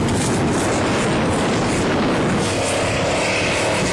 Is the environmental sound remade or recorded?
recorded